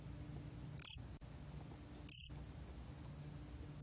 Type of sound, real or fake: real